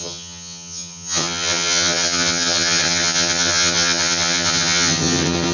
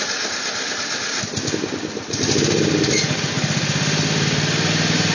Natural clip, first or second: second